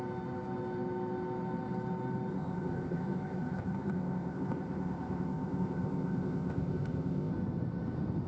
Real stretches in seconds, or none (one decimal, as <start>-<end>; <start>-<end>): 0.0-2.3; 7.3-8.3